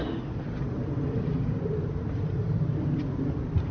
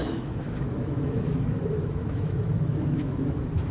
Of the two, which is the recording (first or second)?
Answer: first